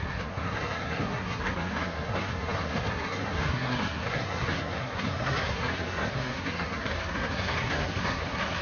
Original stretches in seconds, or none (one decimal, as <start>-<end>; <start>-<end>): none